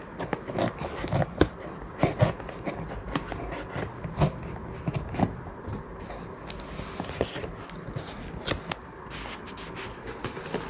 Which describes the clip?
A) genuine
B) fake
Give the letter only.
A